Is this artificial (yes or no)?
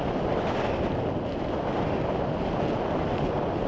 no